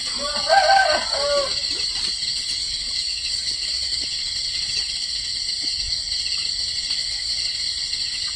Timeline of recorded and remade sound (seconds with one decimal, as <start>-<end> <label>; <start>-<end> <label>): 0.0-2.6 recorded; 2.6-5.3 remade; 5.3-7.0 recorded; 7.0-7.6 remade; 7.6-8.4 recorded